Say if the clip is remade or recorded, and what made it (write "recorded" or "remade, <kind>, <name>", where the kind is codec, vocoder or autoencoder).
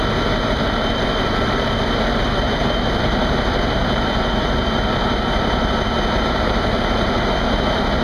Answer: remade, vocoder, BigVGAN v2